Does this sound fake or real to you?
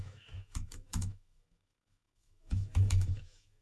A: fake